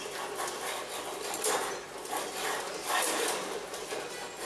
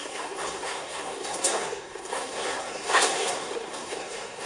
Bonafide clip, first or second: first